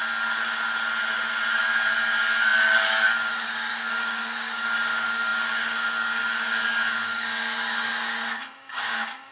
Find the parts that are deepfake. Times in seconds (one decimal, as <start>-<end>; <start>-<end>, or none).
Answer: 1.6-9.3